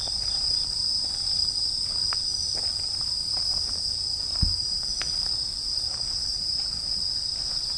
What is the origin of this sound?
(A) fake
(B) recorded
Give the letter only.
B